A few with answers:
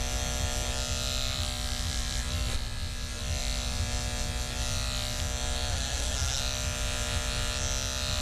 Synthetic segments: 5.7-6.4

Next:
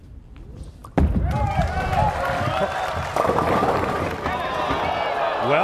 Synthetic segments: none

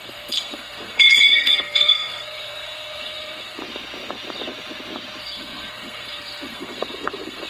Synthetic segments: 0.0-3.6; 5.2-7.5

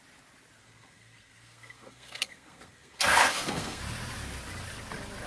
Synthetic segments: 0.6-3.8

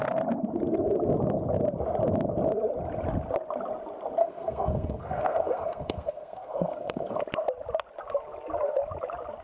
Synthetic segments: 4.2-7.2

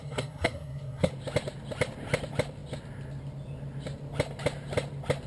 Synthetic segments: 0.0-1.1

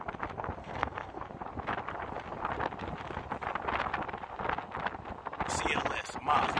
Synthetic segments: 0.6-1.2

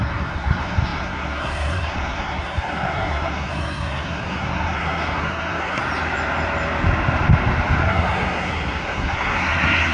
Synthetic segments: 0.0-5.8; 7.8-9.9